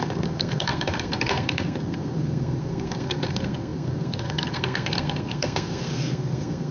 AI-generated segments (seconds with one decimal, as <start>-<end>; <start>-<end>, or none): 0.0-6.7